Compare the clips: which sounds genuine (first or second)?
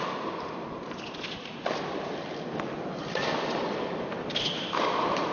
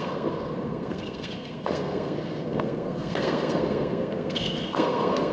first